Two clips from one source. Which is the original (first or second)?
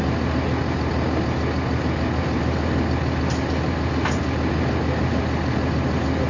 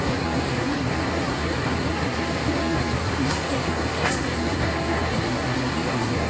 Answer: first